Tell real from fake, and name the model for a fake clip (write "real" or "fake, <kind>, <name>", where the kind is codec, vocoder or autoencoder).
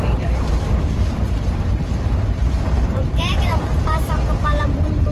fake, vocoder, BigVGAN v2